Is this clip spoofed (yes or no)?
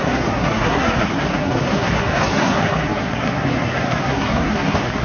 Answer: yes